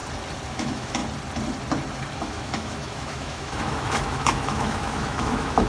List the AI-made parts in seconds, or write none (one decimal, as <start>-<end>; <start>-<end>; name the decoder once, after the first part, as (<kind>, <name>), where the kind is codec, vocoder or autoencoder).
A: 0.5-1.0 (autoencoder, DAC-VAE); 2.2-5.7